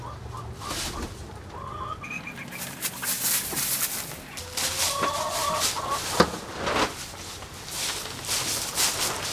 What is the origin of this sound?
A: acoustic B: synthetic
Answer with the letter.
A